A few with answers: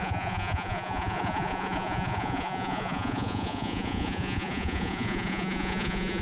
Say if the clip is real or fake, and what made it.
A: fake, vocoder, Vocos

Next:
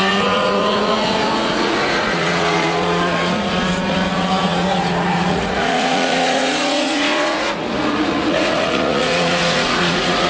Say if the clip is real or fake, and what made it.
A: fake, vocoder, Vocos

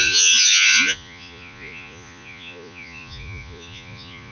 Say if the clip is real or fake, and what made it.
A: fake, vocoder, Vocos